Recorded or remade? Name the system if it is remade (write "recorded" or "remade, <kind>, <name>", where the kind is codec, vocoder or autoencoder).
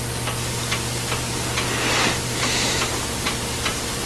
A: recorded